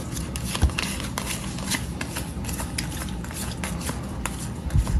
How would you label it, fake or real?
real